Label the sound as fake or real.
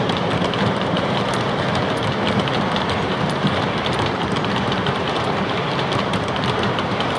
fake